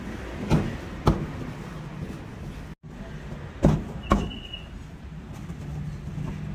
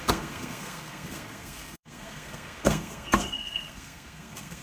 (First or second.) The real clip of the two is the first